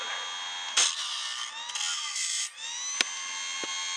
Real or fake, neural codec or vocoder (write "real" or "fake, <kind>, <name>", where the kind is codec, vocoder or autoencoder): real